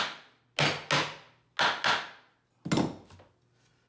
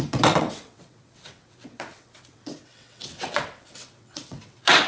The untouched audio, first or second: first